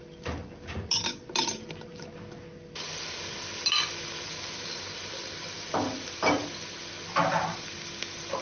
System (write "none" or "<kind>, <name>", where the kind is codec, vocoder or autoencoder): none